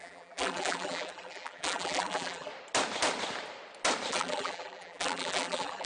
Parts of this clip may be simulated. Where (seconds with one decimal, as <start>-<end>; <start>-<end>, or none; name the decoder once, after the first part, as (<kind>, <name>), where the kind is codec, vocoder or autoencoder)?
0.0-2.5 (vocoder, BigVGAN v2); 4.1-5.8